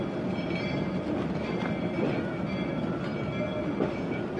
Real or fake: real